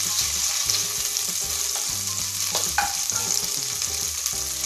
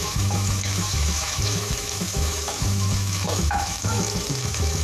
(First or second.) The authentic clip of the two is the first